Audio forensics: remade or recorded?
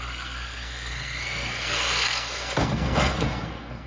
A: remade